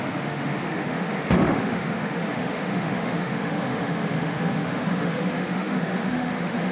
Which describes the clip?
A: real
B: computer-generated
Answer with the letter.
B